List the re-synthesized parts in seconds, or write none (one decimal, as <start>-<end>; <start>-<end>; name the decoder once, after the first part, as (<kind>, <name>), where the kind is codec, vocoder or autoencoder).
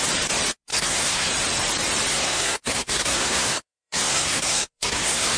0.7-1.3 (codec, SNAC); 2.1-5.4